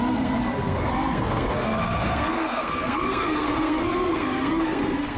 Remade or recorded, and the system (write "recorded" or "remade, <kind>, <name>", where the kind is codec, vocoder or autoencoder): remade, codec, SNAC